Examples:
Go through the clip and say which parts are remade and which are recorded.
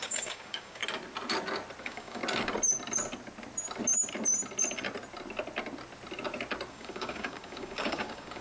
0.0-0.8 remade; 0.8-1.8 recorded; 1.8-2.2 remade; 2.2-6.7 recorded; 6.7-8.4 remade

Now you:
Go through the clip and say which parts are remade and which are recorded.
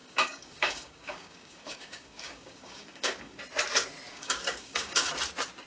0.0-3.4 remade; 3.4-4.1 recorded; 4.1-5.1 remade; 5.1-5.7 recorded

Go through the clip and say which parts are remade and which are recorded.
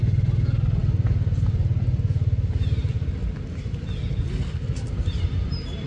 0.0-5.9 recorded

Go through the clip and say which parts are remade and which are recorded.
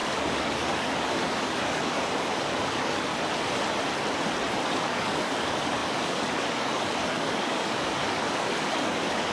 0.0-3.1 remade; 3.1-4.7 recorded; 4.7-9.3 remade